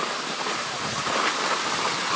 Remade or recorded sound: recorded